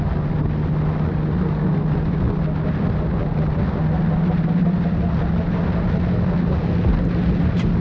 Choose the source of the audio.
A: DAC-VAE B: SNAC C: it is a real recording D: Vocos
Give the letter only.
C